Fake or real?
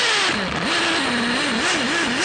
real